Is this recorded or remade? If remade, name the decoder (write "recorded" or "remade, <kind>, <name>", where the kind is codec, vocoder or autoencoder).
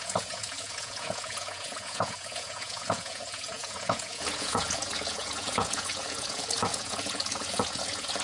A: remade, vocoder, Vocos